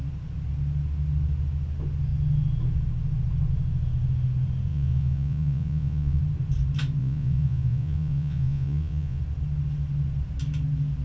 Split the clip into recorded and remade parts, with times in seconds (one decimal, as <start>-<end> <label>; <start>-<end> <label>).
0.0-4.7 recorded; 4.7-6.2 remade; 6.2-7.0 recorded; 7.0-9.2 remade; 9.2-11.0 recorded